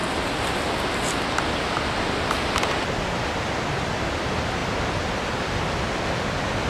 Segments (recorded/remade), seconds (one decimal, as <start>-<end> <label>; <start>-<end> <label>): 0.0-1.4 remade; 1.4-4.6 recorded; 4.6-5.2 remade; 5.2-6.7 recorded